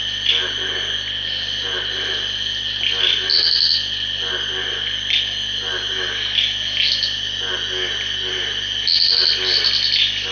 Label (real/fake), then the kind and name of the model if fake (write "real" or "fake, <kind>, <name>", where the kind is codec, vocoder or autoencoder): real